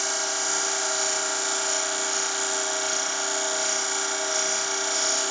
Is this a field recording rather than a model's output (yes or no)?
yes